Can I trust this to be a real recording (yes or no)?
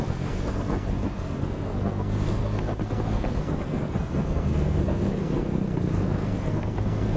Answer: no